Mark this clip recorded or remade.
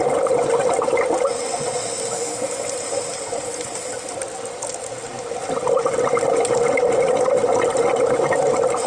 recorded